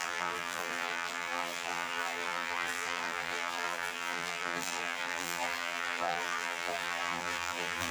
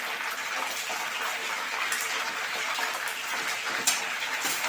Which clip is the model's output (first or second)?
first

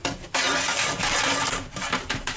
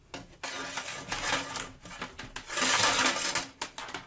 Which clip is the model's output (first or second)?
first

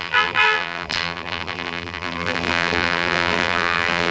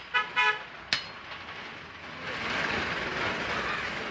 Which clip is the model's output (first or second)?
first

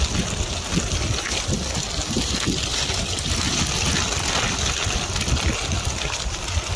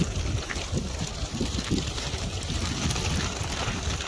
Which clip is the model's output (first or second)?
second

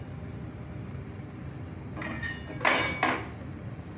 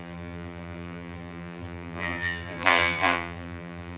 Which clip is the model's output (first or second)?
second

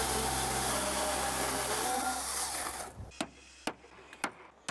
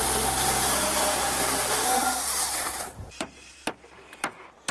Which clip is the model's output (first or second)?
second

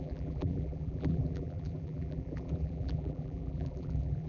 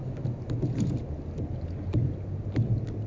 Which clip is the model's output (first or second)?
first